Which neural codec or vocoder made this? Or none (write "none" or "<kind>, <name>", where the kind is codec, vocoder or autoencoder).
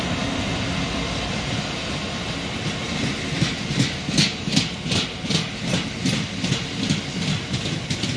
none